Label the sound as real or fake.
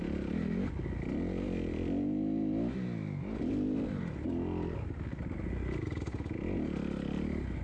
real